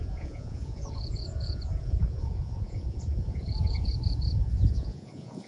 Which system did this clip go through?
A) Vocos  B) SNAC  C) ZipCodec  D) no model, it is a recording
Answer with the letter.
A